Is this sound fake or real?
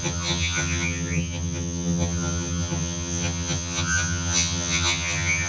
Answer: fake